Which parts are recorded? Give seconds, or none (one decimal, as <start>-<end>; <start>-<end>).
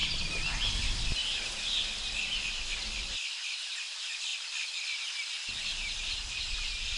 0.0-5.7; 6.4-7.0